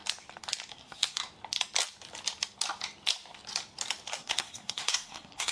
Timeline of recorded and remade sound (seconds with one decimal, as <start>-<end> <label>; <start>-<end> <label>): 0.0-0.7 recorded; 0.7-1.2 remade; 1.2-4.1 recorded; 4.1-5.5 remade